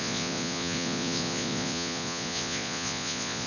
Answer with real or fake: fake